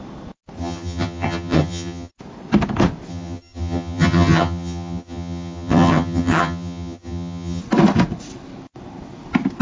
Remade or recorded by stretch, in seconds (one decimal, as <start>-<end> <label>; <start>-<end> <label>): 0.0-0.6 recorded; 0.6-2.1 remade; 2.1-3.1 recorded; 3.1-7.6 remade; 7.6-9.6 recorded